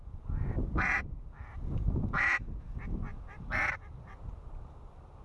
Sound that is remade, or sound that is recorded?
recorded